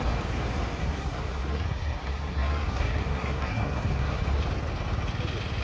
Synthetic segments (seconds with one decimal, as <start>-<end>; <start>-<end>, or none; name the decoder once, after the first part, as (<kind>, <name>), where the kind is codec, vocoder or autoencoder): 0.8-4.2 (codec, SNAC)